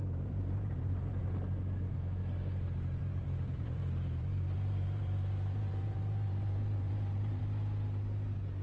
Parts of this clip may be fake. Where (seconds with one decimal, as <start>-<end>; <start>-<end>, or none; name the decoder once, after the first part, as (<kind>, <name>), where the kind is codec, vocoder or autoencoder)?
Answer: 0.0-1.1 (vocoder, BigVGAN v2); 3.0-7.4